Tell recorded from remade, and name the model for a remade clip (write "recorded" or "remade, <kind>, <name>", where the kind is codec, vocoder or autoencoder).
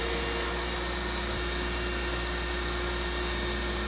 recorded